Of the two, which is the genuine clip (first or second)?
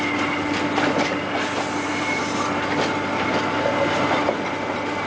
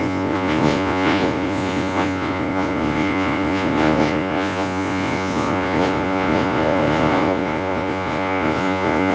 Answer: first